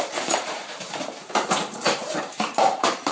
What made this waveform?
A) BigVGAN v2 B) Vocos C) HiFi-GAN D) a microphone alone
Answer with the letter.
A